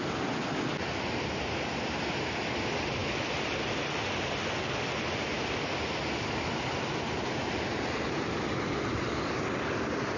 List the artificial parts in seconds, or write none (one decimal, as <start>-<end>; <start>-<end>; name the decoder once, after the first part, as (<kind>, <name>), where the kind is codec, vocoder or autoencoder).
none